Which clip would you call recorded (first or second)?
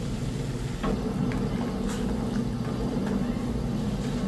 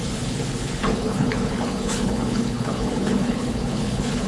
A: first